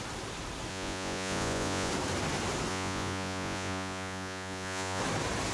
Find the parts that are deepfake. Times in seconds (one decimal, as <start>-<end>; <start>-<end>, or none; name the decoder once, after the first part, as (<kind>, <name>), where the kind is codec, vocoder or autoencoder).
0.7-1.9 (vocoder, Vocos); 2.7-5.0